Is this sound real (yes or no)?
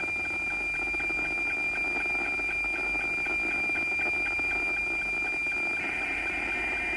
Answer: yes